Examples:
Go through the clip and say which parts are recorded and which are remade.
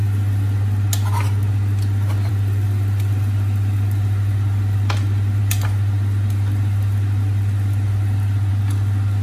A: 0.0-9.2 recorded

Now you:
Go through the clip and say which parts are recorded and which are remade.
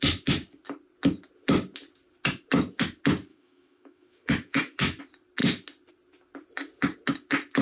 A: 0.0-3.3 recorded; 3.3-5.0 remade; 5.0-7.6 recorded